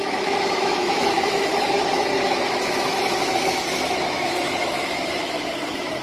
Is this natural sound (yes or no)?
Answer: no